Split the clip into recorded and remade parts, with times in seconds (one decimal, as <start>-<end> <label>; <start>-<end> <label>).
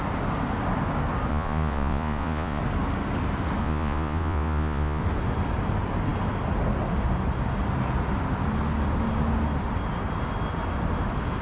0.0-1.3 recorded; 1.3-2.6 remade; 2.6-3.6 recorded; 3.6-5.0 remade; 5.0-11.4 recorded